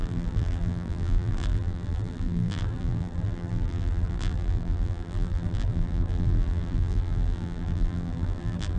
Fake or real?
fake